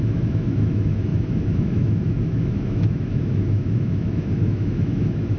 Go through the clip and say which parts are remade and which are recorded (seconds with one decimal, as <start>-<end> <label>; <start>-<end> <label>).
0.0-5.4 remade